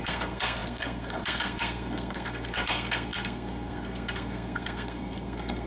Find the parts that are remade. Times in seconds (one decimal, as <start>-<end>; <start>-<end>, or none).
0.0-5.7